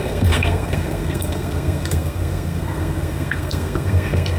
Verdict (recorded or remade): remade